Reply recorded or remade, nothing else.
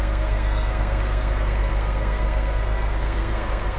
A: remade